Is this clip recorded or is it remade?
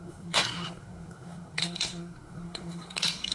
remade